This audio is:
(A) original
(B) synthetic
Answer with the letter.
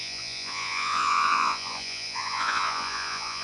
B